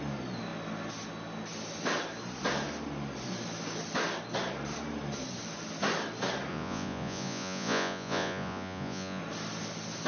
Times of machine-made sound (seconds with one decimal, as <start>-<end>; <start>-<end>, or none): 6.5-9.2